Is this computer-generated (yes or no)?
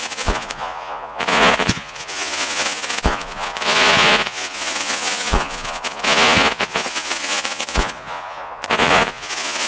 yes